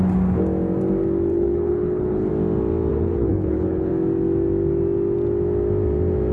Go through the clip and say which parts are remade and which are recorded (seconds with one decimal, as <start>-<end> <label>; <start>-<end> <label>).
0.0-1.3 recorded; 1.3-2.3 remade; 2.3-2.9 recorded; 2.9-3.9 remade; 3.9-6.3 recorded

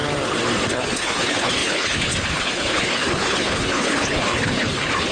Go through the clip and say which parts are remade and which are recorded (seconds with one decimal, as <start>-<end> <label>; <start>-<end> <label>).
0.0-0.7 recorded; 0.7-5.1 remade

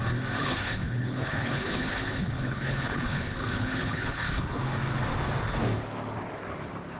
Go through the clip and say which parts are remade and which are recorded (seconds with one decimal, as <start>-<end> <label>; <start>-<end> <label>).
0.0-0.4 recorded; 0.4-4.6 remade; 4.6-7.0 recorded

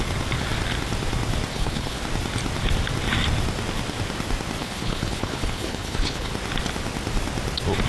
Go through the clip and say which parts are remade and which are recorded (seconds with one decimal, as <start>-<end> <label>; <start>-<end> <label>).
0.0-1.5 recorded; 1.5-2.0 remade; 2.0-4.6 recorded; 4.6-6.3 remade; 6.3-7.9 recorded

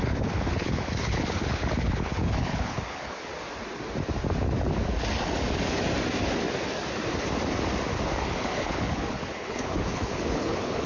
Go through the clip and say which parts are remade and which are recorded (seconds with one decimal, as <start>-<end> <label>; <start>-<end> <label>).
0.0-3.3 remade; 3.3-8.2 recorded; 8.2-10.9 remade

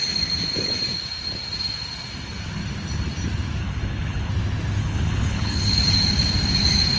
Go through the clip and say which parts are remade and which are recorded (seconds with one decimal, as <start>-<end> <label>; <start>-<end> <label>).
0.0-3.6 recorded; 3.6-4.3 remade; 4.3-4.8 recorded; 4.8-5.9 remade; 5.9-7.0 recorded